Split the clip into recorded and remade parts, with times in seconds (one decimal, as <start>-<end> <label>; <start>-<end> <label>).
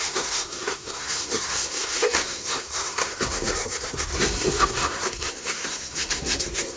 0.0-6.8 remade